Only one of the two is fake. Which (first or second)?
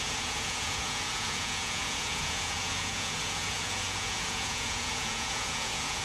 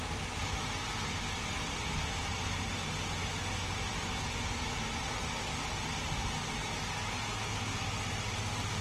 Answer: first